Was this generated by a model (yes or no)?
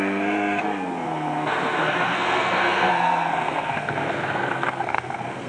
yes